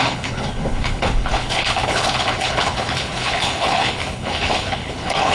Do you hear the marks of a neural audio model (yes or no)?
yes